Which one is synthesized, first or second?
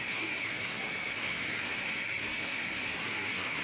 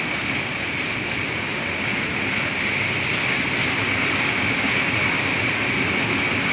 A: first